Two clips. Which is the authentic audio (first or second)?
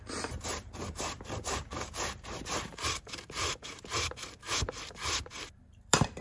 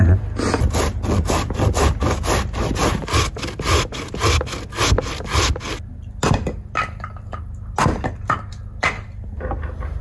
second